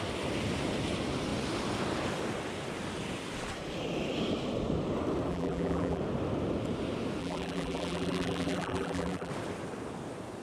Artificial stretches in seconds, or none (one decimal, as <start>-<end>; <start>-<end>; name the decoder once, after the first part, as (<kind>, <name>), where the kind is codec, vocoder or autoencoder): 5.3-6.0 (vocoder, BigVGAN v2); 7.2-9.3